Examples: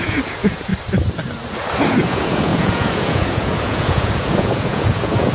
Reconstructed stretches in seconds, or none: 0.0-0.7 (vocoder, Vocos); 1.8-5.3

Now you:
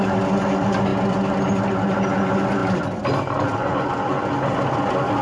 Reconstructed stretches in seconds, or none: none

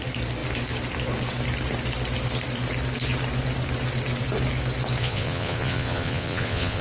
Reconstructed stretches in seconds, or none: 5.0-6.8 (vocoder, Vocos)

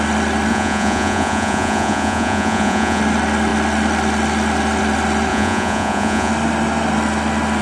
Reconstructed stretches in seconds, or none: 0.5-3.0 (vocoder, Vocos); 5.3-6.3

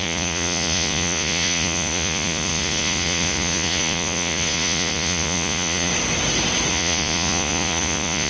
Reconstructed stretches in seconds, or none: 0.0-5.9 (vocoder, Vocos); 6.7-8.3

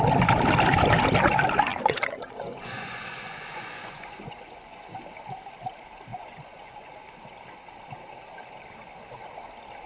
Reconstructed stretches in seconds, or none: 1.7-5.0 (vocoder, Vocos); 6.1-6.9

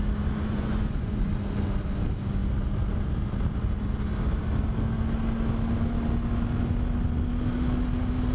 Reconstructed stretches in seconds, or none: 0.5-1.3 (vocoder, Vocos)

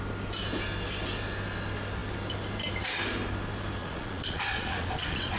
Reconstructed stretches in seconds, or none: 3.8-5.4 (vocoder, Vocos)